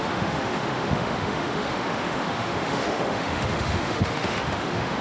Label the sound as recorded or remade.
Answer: remade